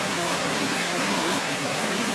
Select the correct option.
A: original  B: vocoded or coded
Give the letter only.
B